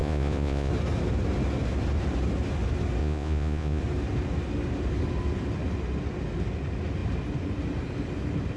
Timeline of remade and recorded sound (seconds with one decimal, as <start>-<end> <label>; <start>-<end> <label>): 0.0-0.7 remade; 0.7-3.0 recorded; 3.0-3.8 remade; 3.8-8.6 recorded